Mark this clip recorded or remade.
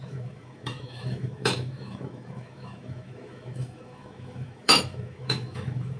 remade